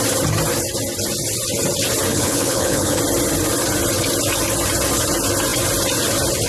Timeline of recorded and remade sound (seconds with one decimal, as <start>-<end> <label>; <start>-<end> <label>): 0.0-2.1 recorded; 2.1-3.0 remade; 3.0-6.5 recorded